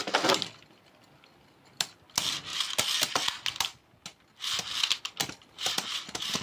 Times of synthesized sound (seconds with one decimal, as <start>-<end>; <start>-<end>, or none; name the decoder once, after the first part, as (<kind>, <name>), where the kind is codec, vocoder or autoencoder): none